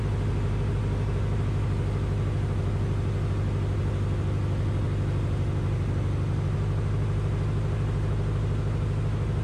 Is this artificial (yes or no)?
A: no